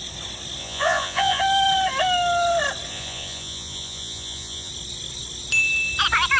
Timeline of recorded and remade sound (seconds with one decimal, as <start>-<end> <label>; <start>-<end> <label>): 0.0-0.6 recorded; 0.6-1.4 remade; 1.4-2.9 recorded; 2.9-4.7 remade; 4.7-6.4 recorded